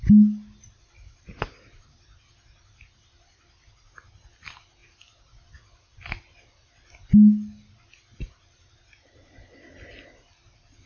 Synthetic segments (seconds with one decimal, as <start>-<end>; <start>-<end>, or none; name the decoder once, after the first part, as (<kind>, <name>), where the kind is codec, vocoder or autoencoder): none